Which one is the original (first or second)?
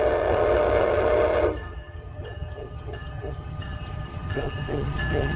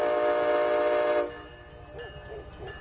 second